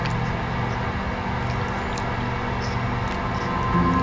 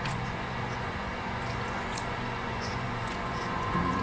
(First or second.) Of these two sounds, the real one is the first